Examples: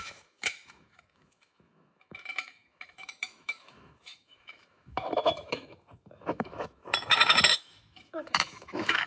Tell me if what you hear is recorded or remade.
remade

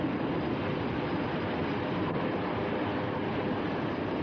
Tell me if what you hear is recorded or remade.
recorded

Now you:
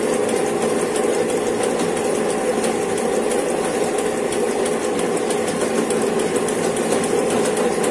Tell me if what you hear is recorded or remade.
recorded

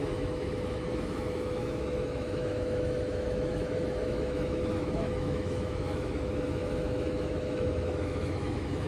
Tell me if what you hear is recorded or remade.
remade